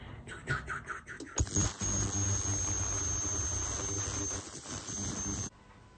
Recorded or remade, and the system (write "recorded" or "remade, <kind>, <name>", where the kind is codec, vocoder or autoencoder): recorded